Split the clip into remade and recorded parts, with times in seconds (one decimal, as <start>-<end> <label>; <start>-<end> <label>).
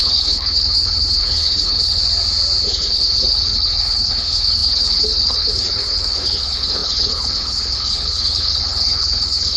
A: 0.0-2.0 remade; 2.0-2.6 recorded; 2.6-9.6 remade